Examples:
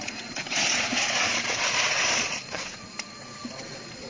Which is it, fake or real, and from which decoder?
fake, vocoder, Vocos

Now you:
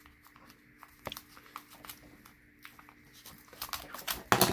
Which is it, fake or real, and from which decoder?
real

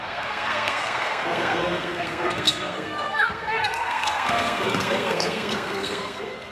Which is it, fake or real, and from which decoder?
fake, codec, SNAC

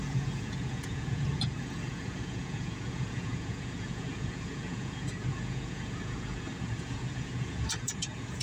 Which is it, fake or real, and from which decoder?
fake, vocoder, Vocos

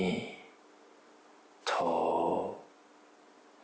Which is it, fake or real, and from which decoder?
real